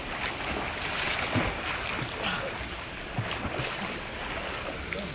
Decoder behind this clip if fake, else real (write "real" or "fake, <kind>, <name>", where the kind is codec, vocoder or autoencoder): real